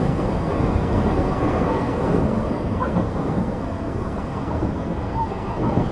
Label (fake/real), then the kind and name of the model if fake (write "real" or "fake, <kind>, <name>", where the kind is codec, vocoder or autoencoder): fake, codec, SNAC